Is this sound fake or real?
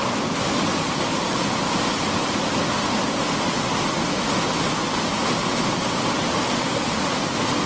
real